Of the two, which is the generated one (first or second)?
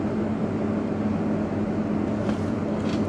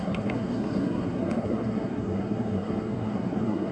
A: second